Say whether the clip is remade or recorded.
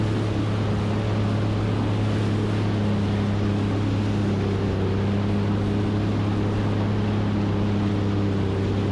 recorded